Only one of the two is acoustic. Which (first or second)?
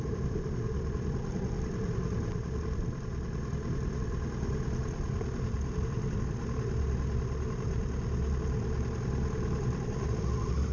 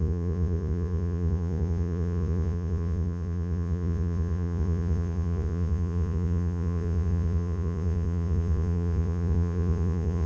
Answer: first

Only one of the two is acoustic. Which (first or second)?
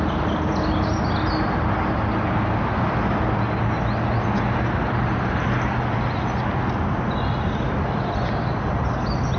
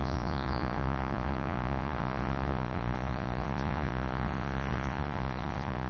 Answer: first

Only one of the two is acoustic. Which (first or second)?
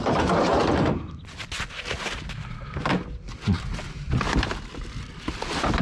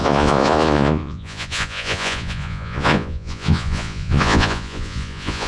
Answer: first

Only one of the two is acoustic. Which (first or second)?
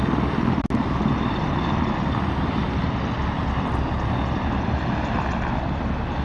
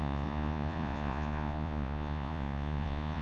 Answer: first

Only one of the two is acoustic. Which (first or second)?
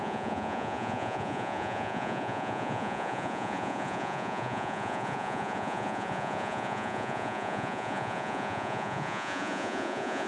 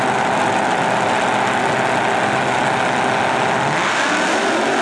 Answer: second